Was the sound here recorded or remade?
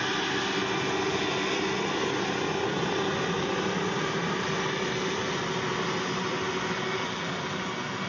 recorded